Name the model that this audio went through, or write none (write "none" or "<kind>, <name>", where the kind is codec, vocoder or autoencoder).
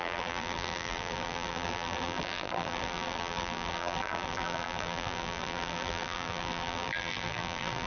vocoder, BigVGAN v2